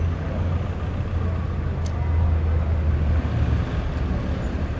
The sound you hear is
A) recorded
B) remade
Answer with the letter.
A